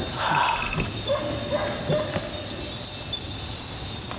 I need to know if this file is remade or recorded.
recorded